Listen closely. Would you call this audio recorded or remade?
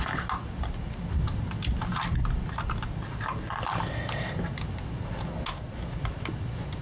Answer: recorded